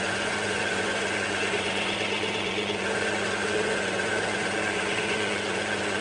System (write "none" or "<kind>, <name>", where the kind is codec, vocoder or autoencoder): vocoder, Vocos